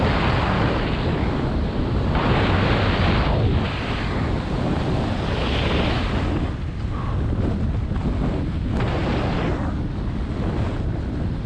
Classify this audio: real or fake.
real